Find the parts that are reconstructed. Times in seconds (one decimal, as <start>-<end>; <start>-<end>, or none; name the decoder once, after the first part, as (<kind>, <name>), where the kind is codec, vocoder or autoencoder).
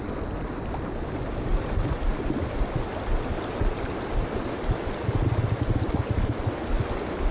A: none